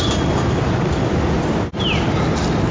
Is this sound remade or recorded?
recorded